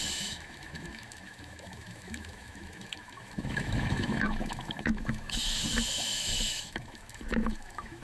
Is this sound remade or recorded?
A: remade